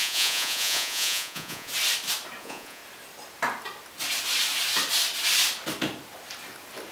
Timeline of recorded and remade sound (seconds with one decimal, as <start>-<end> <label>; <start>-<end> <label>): 0.0-1.7 remade; 1.7-2.4 recorded; 2.4-2.8 remade; 2.8-6.9 recorded